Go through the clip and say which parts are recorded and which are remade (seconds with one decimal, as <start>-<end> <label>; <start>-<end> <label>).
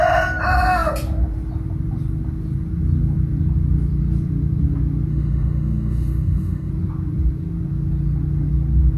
0.0-5.1 recorded; 5.1-6.7 remade; 6.7-9.0 recorded